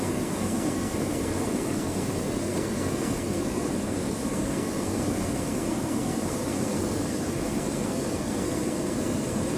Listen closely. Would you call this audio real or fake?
fake